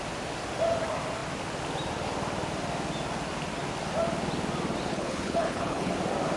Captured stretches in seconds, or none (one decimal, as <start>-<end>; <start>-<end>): 0.0-4.9; 5.9-6.4